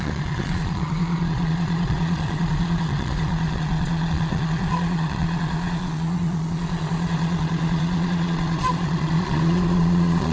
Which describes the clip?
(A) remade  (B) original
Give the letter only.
A